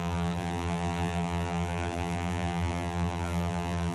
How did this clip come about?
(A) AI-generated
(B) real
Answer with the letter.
A